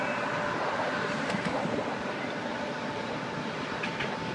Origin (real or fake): fake